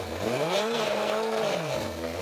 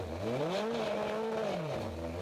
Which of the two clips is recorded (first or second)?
second